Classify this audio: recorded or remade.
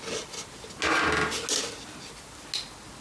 recorded